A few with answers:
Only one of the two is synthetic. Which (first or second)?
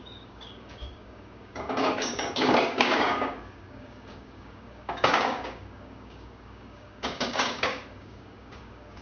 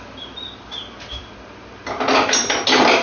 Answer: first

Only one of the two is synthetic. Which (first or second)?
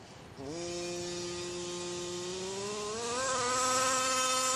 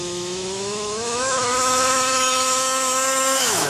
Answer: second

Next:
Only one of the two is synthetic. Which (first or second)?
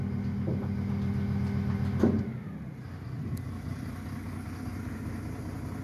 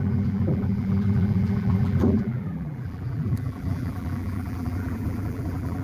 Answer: second